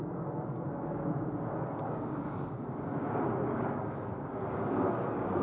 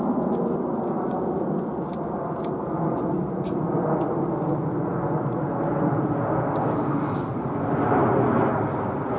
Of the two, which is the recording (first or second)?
second